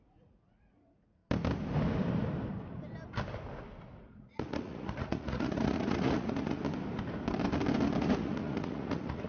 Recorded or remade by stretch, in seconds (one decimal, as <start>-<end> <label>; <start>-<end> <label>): 0.0-1.2 remade; 1.2-4.0 recorded; 4.0-6.6 remade; 6.6-8.0 recorded; 8.0-9.3 remade